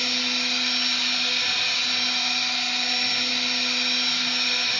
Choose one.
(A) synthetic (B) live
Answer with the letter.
B